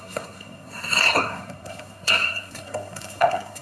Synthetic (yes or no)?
yes